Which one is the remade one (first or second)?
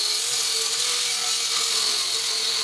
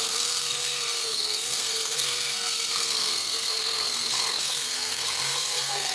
second